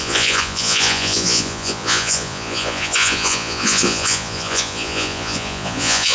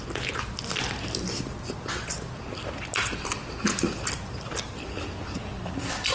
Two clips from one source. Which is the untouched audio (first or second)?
second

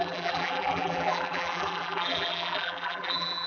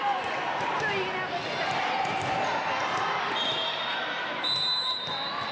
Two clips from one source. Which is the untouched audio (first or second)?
second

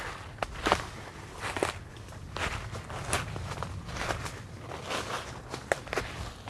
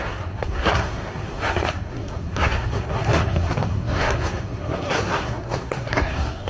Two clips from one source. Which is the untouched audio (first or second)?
first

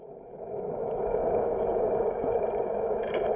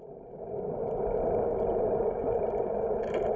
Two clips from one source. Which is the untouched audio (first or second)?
second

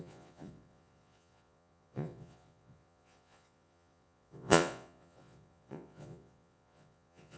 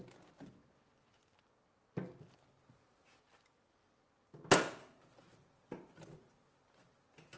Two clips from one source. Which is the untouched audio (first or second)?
second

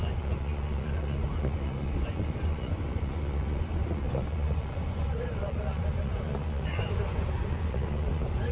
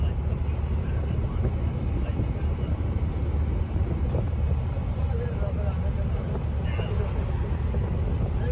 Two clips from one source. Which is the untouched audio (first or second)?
second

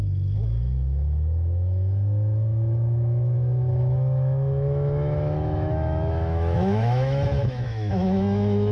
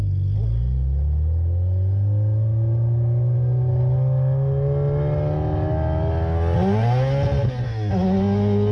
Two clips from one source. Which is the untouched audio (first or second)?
second